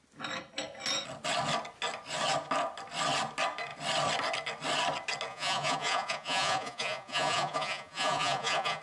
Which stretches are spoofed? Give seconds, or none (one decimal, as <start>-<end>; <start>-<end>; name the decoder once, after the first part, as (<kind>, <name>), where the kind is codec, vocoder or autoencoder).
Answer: 5.3-8.8 (vocoder, Vocos)